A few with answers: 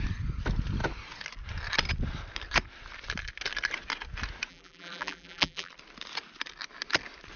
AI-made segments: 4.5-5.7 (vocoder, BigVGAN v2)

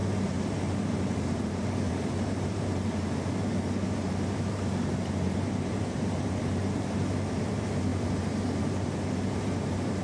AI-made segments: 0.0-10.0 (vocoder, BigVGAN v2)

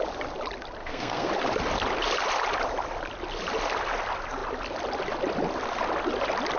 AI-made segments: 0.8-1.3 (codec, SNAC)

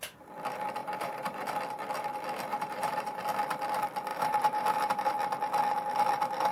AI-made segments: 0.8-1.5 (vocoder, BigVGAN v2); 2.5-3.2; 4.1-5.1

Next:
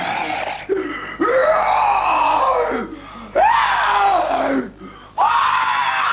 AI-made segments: none

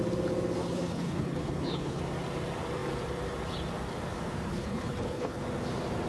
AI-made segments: 0.6-2.0 (codec, HILCodec); 4.5-5.4

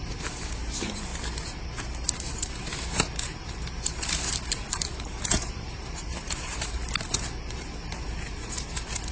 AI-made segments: 0.0-1.1 (vocoder, BigVGAN v2); 1.8-6.8; 7.5-9.1